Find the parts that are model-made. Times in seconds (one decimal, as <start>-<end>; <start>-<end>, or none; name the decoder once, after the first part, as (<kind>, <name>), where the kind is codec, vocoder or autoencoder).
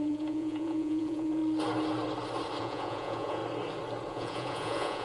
0.0-1.4 (vocoder, Vocos); 2.6-3.4; 4.1-5.0